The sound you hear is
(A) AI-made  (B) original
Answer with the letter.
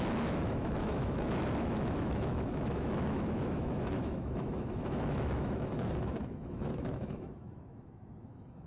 A